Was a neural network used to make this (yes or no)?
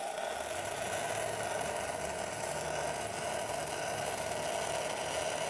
no